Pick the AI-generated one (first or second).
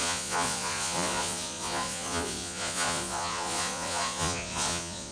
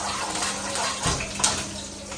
first